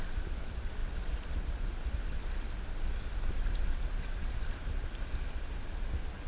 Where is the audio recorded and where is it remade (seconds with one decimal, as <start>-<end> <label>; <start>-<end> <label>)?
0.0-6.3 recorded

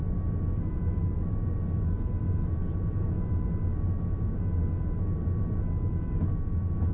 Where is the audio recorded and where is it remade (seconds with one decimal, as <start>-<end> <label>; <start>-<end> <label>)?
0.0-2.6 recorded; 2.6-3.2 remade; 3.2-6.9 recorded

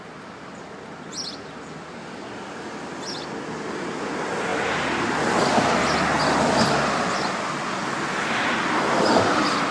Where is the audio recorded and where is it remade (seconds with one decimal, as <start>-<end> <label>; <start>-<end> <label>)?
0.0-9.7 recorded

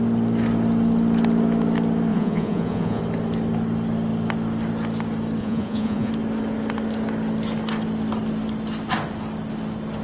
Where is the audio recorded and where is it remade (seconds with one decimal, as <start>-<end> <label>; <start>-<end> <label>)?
0.0-2.1 recorded; 2.1-3.0 remade; 3.0-5.4 recorded; 5.4-6.1 remade; 6.1-10.0 recorded